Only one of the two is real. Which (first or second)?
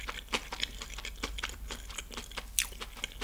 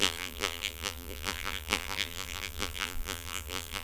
first